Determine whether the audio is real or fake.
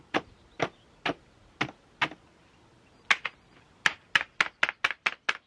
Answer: real